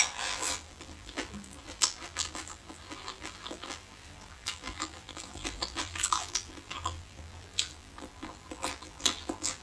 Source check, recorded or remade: remade